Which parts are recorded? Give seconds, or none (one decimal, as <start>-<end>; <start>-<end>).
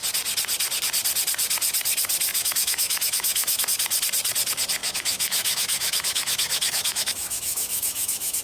0.0-2.3; 3.6-4.8